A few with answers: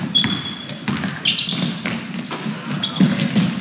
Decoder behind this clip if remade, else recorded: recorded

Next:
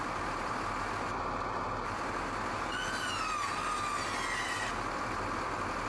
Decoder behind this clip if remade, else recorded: recorded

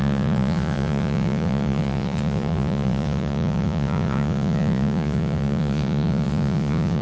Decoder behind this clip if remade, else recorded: remade, vocoder, Vocos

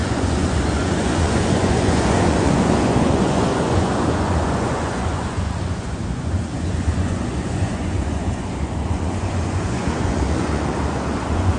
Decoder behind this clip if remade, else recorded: remade, vocoder, Vocos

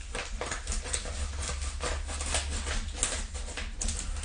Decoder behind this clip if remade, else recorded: recorded